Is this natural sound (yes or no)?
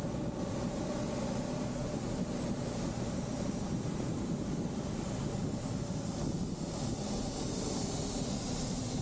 yes